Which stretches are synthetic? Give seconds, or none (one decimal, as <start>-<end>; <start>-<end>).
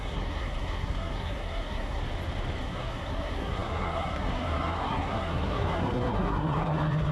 0.0-2.0; 2.6-7.1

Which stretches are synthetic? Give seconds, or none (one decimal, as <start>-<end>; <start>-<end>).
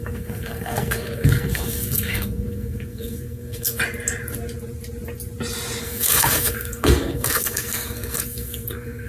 0.0-3.8; 5.8-9.1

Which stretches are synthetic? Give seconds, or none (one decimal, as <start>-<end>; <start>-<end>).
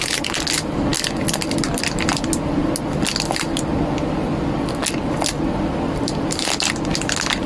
none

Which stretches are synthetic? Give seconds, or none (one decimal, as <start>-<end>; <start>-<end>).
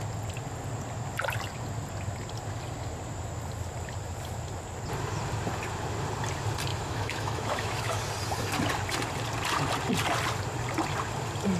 6.7-8.0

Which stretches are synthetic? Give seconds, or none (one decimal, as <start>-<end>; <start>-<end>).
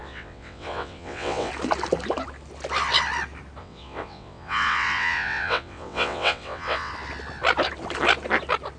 0.0-1.5; 3.6-6.9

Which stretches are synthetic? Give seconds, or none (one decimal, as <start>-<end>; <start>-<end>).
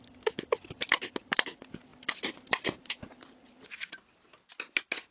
none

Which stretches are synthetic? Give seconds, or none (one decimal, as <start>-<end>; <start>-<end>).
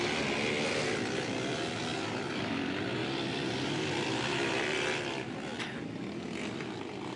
1.9-2.5; 3.0-5.8